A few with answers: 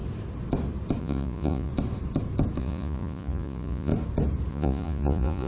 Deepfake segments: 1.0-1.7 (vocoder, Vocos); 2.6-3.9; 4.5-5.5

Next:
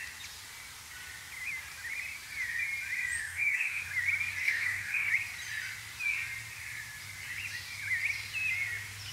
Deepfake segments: 3.2-3.8 (codec, DAC); 4.4-5.1

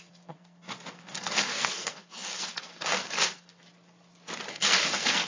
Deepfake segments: 0.0-3.6 (codec, SNAC); 4.5-5.3

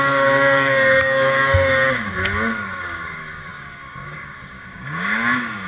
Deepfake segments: 0.0-5.7 (codec, DAC)